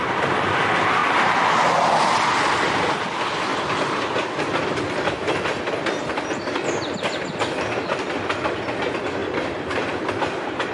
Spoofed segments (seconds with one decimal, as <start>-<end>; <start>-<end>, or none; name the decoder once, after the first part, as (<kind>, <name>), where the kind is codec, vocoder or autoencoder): 3.5-7.3 (vocoder, BigVGAN v2); 9.2-10.7